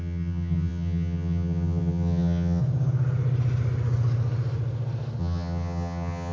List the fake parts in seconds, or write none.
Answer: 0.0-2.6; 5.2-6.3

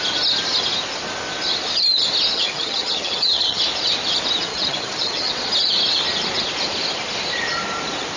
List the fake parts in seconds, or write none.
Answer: 2.3-3.6; 4.5-5.3

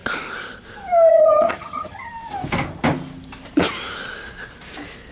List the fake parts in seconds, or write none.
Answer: 1.1-2.1